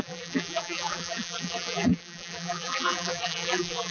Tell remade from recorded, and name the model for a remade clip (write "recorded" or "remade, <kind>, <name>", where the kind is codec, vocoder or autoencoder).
remade, vocoder, BigVGAN v2